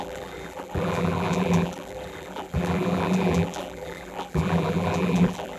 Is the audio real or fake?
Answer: fake